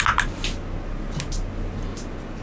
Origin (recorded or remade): recorded